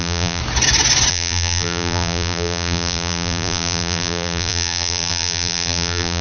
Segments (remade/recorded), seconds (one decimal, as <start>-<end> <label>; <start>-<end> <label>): 0.0-0.4 remade; 0.4-1.1 recorded; 1.1-6.2 remade